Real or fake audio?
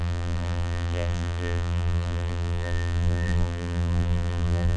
fake